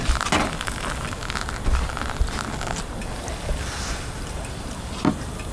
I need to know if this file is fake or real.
real